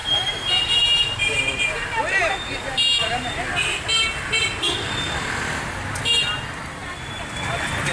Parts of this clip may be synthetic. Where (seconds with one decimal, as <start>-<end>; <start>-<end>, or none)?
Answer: 0.0-2.6